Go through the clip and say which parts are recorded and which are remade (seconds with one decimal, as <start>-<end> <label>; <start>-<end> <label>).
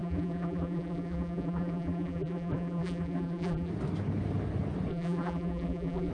0.0-3.7 remade; 3.7-4.9 recorded; 4.9-6.1 remade